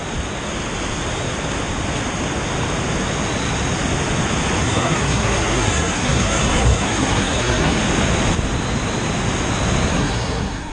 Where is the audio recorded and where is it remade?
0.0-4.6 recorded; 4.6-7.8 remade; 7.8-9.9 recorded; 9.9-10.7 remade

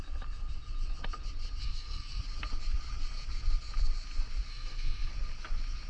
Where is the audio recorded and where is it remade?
0.0-1.6 recorded; 1.6-2.2 remade; 2.2-4.5 recorded; 4.5-5.1 remade; 5.1-5.9 recorded

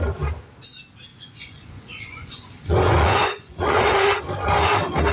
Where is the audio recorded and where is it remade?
0.0-1.1 recorded; 1.1-4.2 remade; 4.2-5.1 recorded

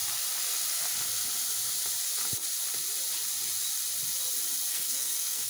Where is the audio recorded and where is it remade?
0.0-4.7 recorded; 4.7-5.5 remade